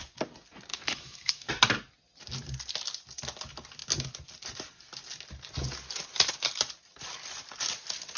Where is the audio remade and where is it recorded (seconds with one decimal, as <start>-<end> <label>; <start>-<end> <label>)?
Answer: 0.0-0.7 recorded; 0.7-1.5 remade; 1.5-8.2 recorded